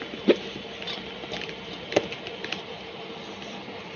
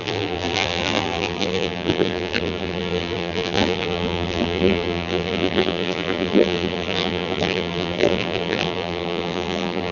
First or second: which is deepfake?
second